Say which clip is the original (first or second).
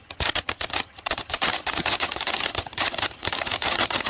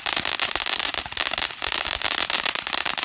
second